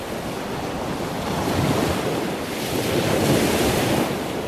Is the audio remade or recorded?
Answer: recorded